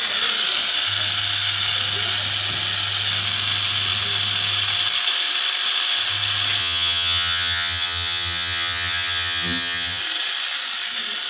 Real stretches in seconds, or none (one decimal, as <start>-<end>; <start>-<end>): 0.0-6.6; 10.0-11.3